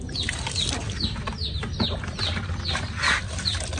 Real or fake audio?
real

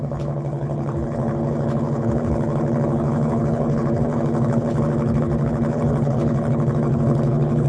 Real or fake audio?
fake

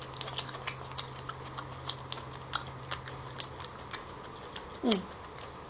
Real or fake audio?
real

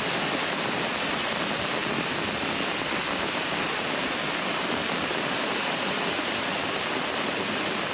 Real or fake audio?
real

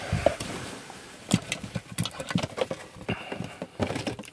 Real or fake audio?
real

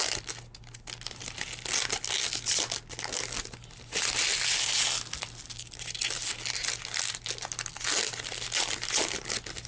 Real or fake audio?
real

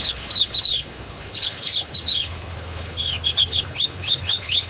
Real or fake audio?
fake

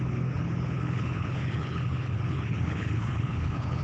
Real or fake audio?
fake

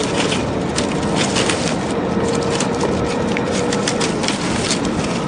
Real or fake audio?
real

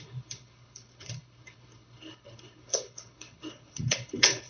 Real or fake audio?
fake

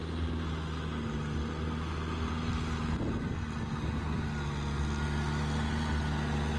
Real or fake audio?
real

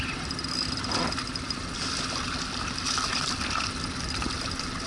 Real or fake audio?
real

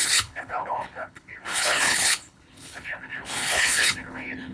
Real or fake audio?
fake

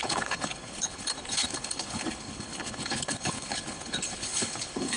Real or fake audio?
fake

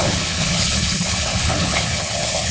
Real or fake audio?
fake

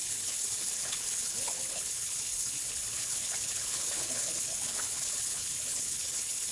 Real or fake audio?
fake